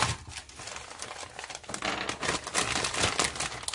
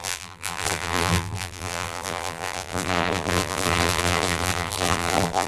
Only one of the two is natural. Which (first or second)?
first